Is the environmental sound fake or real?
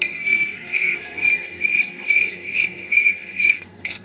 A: fake